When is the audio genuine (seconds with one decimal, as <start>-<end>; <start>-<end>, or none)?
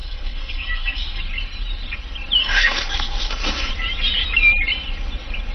1.2-2.4; 3.7-5.5